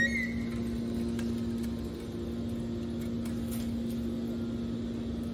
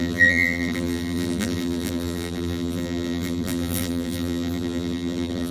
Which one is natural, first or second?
first